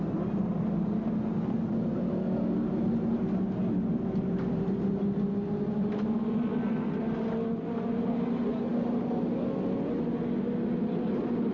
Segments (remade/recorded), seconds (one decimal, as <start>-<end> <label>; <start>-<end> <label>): 0.0-11.5 recorded